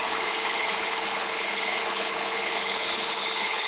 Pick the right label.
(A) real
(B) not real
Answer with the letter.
B